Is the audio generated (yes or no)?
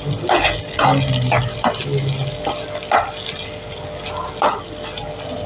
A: no